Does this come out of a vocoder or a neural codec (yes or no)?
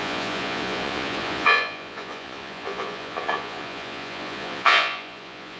yes